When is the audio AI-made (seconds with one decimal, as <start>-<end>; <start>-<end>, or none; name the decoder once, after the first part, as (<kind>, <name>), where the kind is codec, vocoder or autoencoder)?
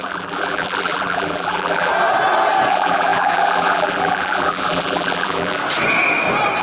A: 0.0-1.9 (vocoder, BigVGAN v2); 2.7-5.6